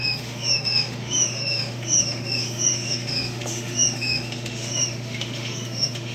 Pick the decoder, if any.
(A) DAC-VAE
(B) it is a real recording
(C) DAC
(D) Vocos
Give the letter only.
A